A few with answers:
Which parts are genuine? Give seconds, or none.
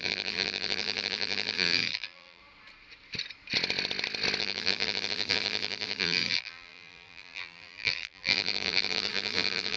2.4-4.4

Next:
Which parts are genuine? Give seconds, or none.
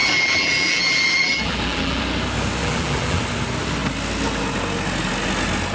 2.0-2.6; 3.2-5.7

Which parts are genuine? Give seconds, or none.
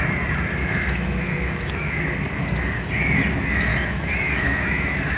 0.0-0.6; 2.0-3.7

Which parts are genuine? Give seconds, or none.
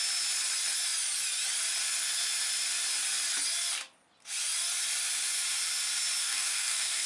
0.0-6.2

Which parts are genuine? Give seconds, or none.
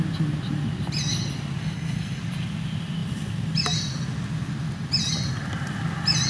0.0-1.6; 2.2-6.3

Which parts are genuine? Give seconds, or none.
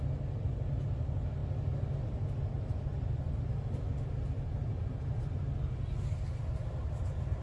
0.0-7.4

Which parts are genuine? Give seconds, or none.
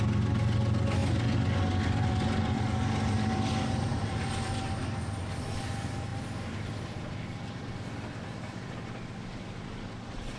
0.0-3.9; 4.8-10.4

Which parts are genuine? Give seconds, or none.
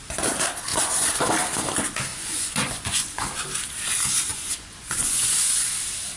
0.0-0.7; 1.2-2.1; 3.3-4.3; 5.7-6.2